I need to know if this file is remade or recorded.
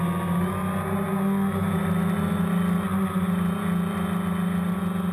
recorded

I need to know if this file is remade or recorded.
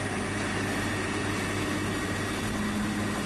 recorded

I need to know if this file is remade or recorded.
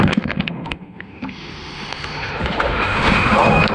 remade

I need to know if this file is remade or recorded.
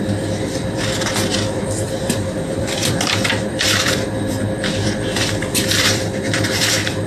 remade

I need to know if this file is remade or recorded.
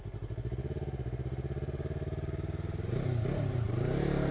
recorded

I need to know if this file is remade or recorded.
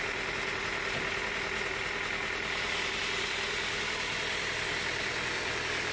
recorded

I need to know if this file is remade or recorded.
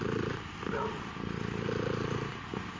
recorded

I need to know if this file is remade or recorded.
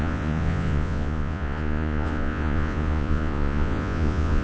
remade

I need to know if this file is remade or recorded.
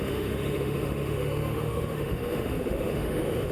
remade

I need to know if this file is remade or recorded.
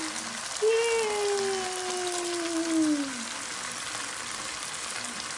recorded